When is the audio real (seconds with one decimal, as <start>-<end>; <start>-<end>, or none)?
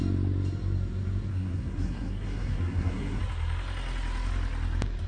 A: 0.0-1.3; 3.2-5.1